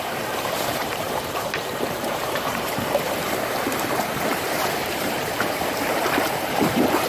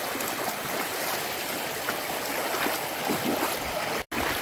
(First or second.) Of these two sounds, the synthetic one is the first